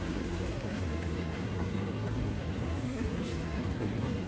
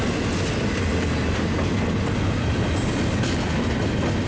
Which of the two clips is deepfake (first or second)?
first